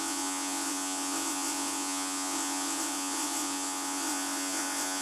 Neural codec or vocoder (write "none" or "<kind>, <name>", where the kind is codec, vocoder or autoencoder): vocoder, Vocos